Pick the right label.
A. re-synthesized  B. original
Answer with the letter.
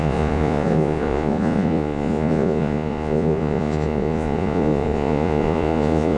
A